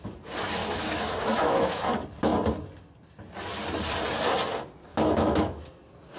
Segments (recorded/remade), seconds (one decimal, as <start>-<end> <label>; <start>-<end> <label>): 0.0-0.6 recorded; 0.6-1.8 remade; 1.8-4.9 recorded; 4.9-5.6 remade; 5.6-6.2 recorded

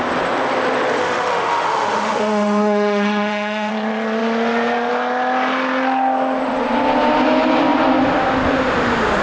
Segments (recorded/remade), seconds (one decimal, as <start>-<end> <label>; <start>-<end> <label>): 0.0-1.0 recorded; 1.0-3.7 remade; 3.7-9.2 recorded

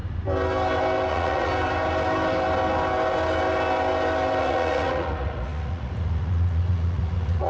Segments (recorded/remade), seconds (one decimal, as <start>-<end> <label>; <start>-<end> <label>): 0.0-1.1 recorded; 1.1-1.5 remade; 1.5-4.4 recorded; 4.4-7.5 remade

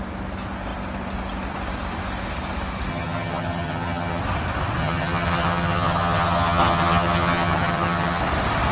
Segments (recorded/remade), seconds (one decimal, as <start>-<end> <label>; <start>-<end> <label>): 0.0-2.9 recorded; 2.9-4.2 remade; 4.2-4.8 recorded; 4.8-8.2 remade; 8.2-8.7 recorded

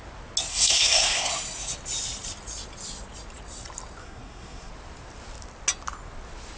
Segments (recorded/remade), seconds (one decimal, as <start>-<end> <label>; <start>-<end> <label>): 0.0-0.5 recorded; 0.5-1.3 remade; 1.3-4.0 recorded; 4.0-4.7 remade; 4.7-6.6 recorded

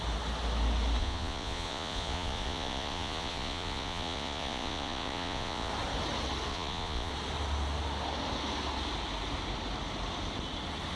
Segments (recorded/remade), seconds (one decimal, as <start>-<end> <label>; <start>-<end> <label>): 0.0-1.0 recorded; 1.0-5.7 remade; 5.7-6.5 recorded; 6.5-7.1 remade; 7.1-11.0 recorded

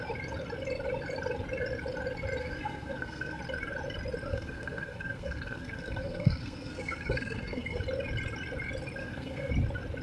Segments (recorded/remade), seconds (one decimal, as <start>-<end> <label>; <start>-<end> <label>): 0.0-2.4 recorded; 2.4-3.4 remade; 3.4-4.3 recorded; 4.3-7.8 remade; 7.8-9.0 recorded; 9.0-9.5 remade; 9.5-10.0 recorded

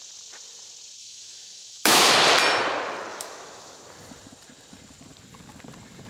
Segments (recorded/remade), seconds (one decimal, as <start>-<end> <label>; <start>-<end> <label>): 0.0-1.0 recorded; 1.0-2.1 remade; 2.1-3.1 recorded; 3.1-3.8 remade; 3.8-6.1 recorded